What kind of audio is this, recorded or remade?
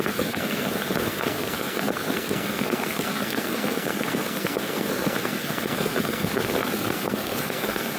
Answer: remade